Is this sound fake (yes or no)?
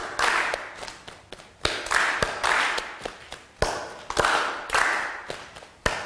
no